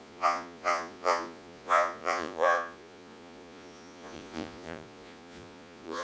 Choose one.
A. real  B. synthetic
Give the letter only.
B